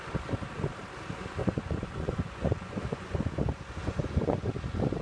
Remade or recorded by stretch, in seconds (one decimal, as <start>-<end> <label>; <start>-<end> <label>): 0.0-1.4 recorded; 1.4-3.2 remade; 3.2-3.8 recorded; 3.8-4.5 remade; 4.5-5.0 recorded